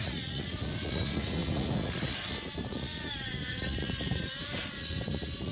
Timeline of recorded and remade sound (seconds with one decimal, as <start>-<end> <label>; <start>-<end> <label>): 0.0-5.5 remade